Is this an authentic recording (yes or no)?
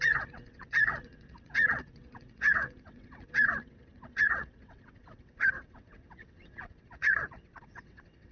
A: no